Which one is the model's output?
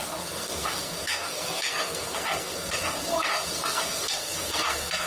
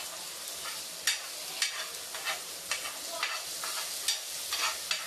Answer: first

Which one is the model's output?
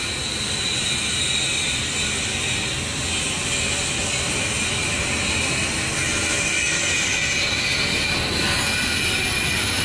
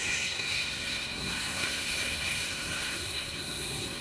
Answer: second